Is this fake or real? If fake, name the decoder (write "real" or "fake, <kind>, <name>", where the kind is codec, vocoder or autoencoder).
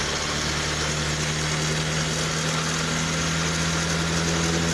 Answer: real